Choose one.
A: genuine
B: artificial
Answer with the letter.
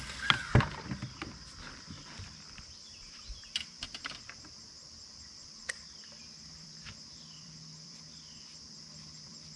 B